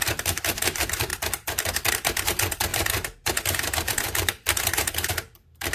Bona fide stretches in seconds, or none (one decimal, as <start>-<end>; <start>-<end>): 1.1-1.9

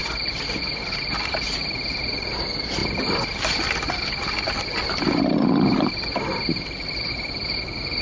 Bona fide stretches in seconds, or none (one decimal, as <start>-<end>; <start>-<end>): 0.0-8.0